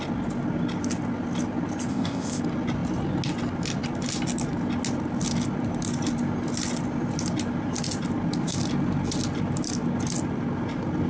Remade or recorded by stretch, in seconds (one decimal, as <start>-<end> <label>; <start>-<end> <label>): 0.0-1.9 recorded; 1.9-2.4 remade; 2.4-11.1 recorded